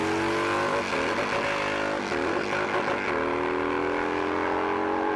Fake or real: real